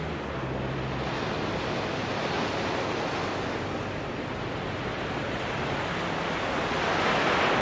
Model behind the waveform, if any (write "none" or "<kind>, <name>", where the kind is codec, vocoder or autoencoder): none